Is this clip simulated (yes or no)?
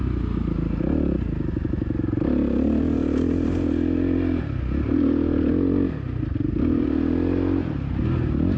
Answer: no